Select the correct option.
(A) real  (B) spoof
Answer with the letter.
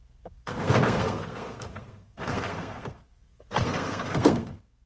B